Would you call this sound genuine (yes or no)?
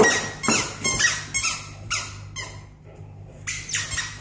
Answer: yes